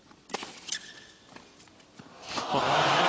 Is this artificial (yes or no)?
no